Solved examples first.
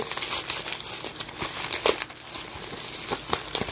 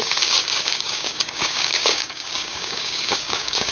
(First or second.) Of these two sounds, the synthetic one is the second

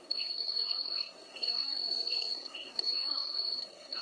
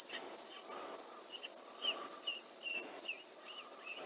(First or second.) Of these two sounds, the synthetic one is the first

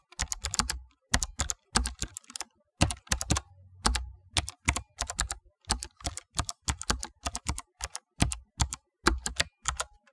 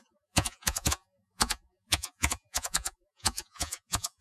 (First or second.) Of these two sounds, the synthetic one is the second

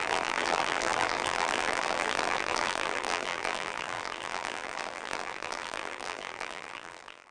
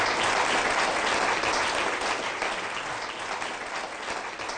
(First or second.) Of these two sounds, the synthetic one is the first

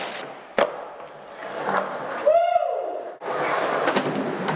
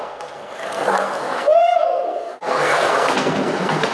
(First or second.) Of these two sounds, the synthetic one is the second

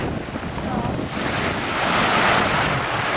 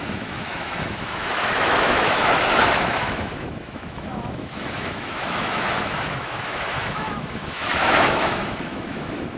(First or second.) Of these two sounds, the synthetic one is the second